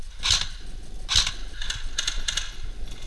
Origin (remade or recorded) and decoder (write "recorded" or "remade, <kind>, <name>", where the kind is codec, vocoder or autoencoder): recorded